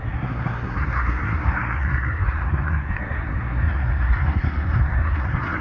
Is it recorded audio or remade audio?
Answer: remade